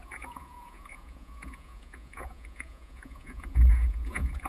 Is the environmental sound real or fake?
fake